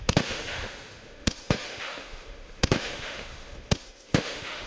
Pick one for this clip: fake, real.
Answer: fake